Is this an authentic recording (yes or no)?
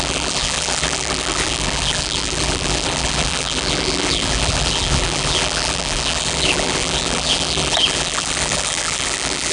no